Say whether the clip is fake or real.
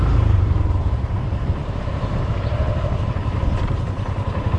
fake